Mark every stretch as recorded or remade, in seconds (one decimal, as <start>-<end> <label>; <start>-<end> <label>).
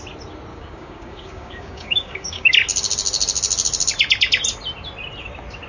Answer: 0.0-0.5 recorded; 0.5-2.5 remade; 2.5-5.7 recorded